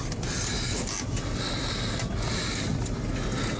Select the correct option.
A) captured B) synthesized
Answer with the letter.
A